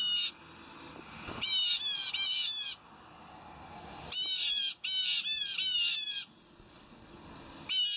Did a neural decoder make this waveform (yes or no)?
no